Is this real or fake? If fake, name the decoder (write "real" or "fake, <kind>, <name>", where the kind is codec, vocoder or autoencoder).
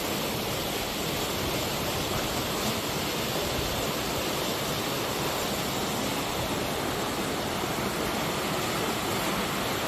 real